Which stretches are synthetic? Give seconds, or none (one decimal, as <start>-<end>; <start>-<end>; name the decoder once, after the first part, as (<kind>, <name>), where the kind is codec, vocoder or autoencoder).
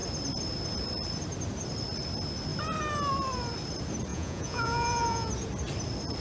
4.1-5.3 (vocoder, Vocos)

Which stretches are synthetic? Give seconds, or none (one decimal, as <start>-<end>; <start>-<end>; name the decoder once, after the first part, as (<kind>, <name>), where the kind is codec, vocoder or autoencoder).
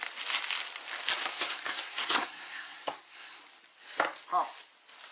1.3-3.4 (codec, SNAC)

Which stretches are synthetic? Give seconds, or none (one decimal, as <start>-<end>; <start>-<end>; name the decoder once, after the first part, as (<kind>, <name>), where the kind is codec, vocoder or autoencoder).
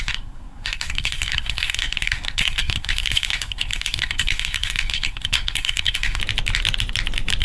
0.0-6.2 (codec, SNAC)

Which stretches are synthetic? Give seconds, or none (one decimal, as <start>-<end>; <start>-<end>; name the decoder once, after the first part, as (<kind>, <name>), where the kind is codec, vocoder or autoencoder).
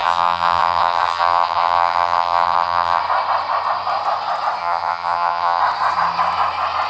0.0-3.0 (vocoder, HiFi-GAN); 4.6-5.6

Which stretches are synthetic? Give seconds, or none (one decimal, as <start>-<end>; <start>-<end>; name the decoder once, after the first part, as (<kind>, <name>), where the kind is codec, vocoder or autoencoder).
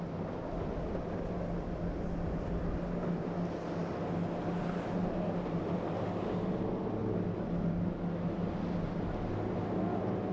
none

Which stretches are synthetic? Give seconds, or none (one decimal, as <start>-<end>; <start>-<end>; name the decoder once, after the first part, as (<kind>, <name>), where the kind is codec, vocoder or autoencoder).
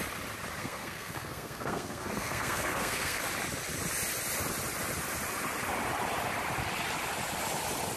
0.6-3.2 (codec, SNAC)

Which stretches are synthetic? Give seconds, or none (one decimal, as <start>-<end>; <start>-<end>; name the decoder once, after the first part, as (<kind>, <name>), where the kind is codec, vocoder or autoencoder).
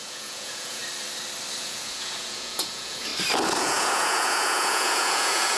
0.0-0.8 (vocoder, Vocos); 1.6-3.1; 3.6-5.6